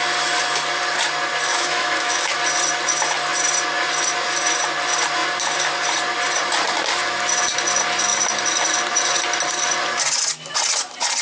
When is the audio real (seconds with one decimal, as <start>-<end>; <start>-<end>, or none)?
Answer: 0.0-1.5; 2.4-11.2